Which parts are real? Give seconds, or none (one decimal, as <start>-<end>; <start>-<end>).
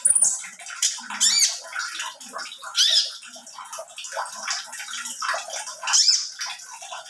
0.0-7.1